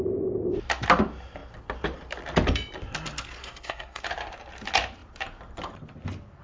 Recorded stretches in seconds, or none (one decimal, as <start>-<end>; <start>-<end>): 0.0-3.4; 4.0-6.4